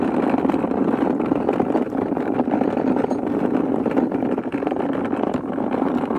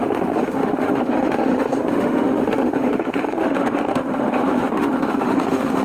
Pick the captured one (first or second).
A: first